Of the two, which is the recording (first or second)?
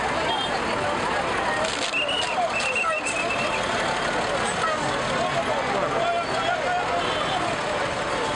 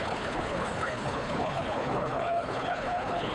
first